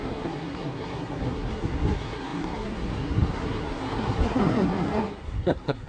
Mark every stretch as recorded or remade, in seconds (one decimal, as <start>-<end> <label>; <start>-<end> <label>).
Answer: 0.0-5.9 remade